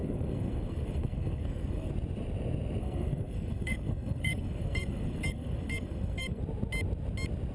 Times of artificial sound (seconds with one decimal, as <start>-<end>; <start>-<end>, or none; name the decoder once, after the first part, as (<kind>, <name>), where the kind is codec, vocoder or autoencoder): 0.0-1.9 (codec, SNAC); 2.8-6.4